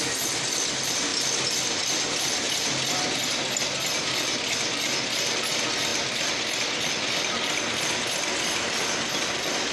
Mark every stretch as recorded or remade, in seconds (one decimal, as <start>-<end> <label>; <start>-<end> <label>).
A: 0.0-9.7 recorded